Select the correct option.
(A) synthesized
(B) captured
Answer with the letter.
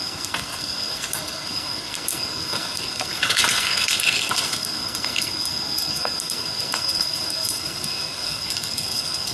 A